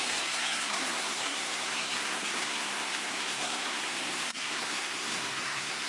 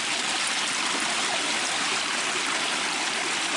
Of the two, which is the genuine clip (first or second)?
second